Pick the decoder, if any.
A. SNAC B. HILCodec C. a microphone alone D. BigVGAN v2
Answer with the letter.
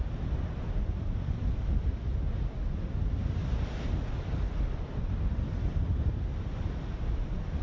C